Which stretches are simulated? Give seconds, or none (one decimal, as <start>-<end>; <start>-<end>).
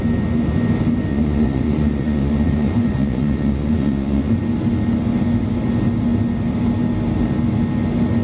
1.1-4.4